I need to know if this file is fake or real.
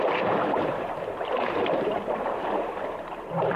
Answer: fake